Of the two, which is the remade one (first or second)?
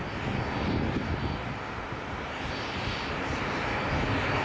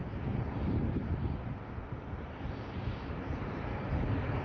second